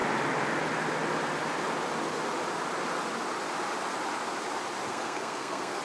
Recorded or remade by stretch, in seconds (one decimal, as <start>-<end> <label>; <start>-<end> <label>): 0.0-4.9 recorded; 4.9-5.8 remade